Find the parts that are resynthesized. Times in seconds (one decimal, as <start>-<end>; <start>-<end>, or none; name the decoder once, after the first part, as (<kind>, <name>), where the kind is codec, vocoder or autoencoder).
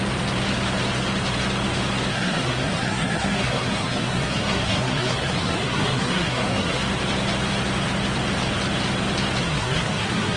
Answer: 2.1-6.8 (codec, SNAC); 9.4-10.4